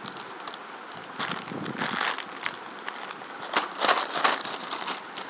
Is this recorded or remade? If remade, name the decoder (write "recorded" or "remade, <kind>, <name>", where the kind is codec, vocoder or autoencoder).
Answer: recorded